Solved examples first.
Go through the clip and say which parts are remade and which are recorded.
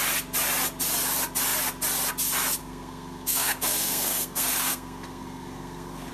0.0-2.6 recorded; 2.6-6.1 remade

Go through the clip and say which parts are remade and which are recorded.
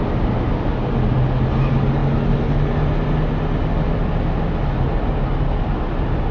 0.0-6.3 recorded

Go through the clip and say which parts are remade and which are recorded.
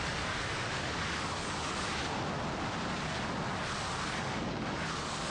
0.0-1.9 remade; 1.9-4.2 recorded; 4.2-5.3 remade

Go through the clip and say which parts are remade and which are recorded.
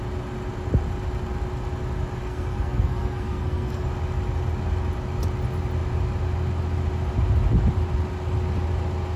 0.0-2.2 recorded; 2.2-3.9 remade; 3.9-9.2 recorded